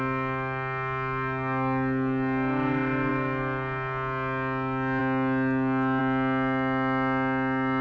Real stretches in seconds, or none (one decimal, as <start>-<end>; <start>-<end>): 0.0-7.8